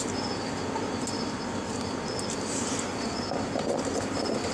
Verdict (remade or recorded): recorded